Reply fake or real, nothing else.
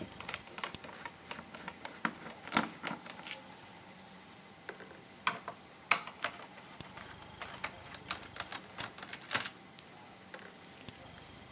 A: real